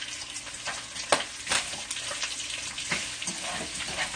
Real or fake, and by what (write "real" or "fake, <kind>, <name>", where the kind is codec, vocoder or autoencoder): real